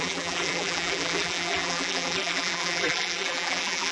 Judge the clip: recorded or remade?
remade